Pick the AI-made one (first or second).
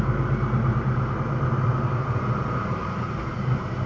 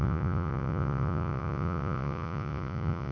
second